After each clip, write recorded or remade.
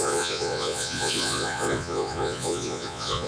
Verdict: remade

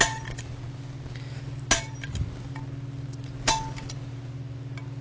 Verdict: recorded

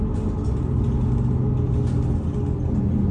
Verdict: recorded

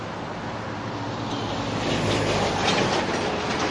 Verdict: recorded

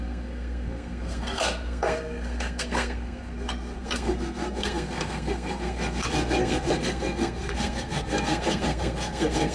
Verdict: remade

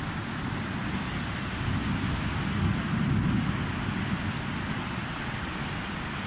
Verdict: recorded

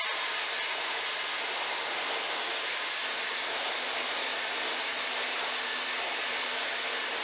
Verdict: recorded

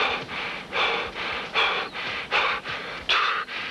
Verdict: recorded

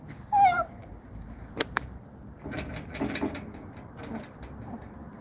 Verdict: recorded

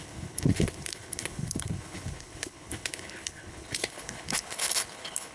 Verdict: remade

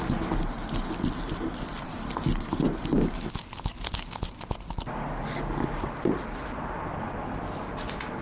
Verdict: recorded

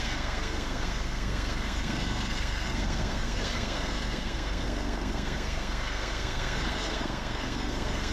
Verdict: remade